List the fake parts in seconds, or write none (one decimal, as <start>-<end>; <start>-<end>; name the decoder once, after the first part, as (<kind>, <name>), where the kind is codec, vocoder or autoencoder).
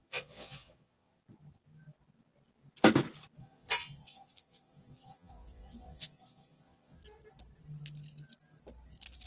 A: 0.0-1.2 (vocoder, Vocos); 3.4-7.0